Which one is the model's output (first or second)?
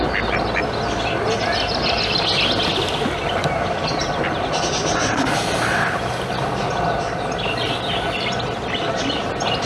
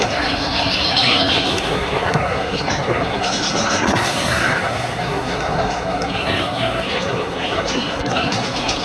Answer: second